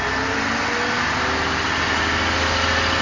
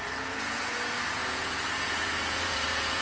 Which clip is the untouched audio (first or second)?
first